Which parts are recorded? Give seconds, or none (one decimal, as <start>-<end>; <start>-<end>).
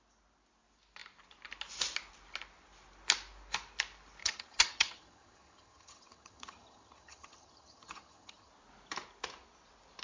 0.0-4.2; 8.5-10.0